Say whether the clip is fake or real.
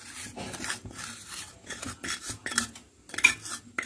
real